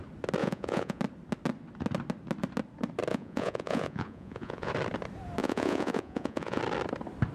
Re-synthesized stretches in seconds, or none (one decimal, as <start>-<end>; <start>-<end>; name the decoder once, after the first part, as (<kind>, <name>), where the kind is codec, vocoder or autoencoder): 0.4-1.0 (vocoder, Vocos); 3.1-4.7; 5.4-6.6